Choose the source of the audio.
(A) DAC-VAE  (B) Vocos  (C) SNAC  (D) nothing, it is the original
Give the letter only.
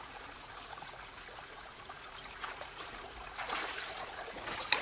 B